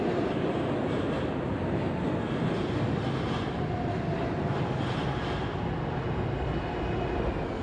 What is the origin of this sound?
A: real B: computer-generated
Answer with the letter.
A